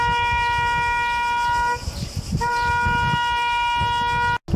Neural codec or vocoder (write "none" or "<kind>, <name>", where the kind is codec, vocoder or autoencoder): none